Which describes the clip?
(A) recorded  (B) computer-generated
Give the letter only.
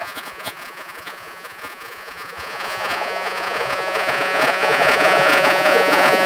B